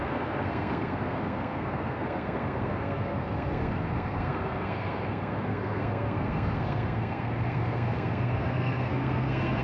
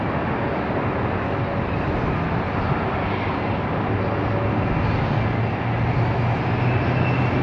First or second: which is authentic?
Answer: second